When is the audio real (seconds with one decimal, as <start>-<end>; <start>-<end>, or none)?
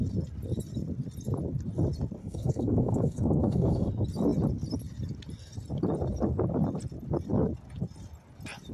0.0-2.2; 3.9-8.7